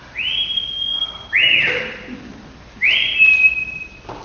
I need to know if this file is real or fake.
real